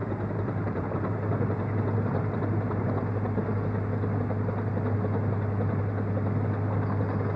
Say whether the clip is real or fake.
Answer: real